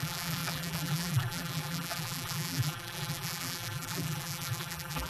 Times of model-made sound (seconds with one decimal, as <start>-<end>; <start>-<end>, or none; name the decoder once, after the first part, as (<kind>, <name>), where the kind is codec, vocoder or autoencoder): 0.0-5.1 (vocoder, BigVGAN v2)